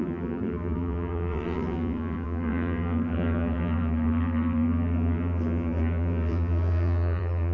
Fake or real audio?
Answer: fake